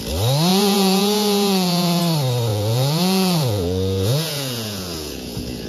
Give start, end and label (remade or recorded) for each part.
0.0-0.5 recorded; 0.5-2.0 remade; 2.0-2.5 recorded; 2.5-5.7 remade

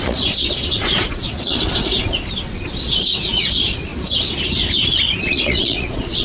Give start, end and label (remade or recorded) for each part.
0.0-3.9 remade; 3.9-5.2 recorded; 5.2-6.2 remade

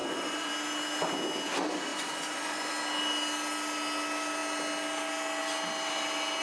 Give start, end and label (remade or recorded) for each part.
0.0-0.5 remade; 0.5-1.9 recorded; 1.9-2.7 remade; 2.7-6.4 recorded

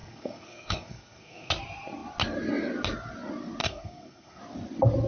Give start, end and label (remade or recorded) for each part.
0.0-1.5 remade; 1.5-3.6 recorded; 3.6-4.4 remade; 4.4-5.1 recorded